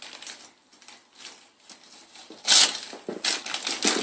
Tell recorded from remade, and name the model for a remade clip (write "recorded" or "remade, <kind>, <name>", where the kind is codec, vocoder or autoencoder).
recorded